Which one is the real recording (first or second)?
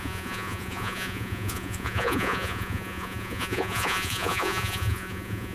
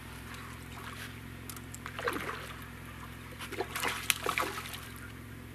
second